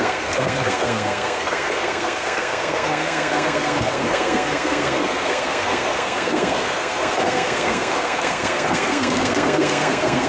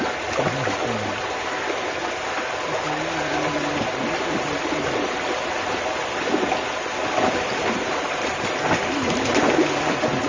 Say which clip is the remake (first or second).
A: first